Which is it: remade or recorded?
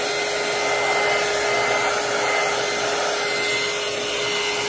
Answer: recorded